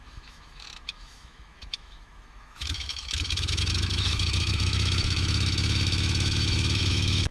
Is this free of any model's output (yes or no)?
no